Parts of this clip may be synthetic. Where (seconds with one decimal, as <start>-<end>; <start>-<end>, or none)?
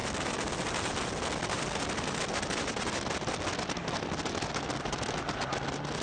none